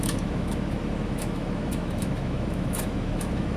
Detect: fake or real fake